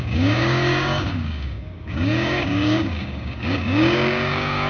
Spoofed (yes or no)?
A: yes